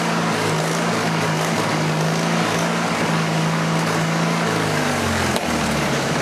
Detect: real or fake fake